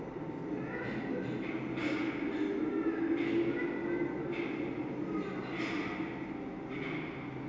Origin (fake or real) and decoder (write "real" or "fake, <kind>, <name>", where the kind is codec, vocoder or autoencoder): real